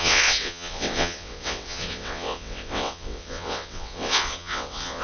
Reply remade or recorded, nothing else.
remade